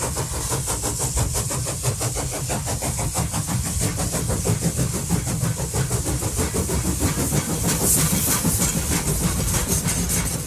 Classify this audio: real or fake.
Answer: real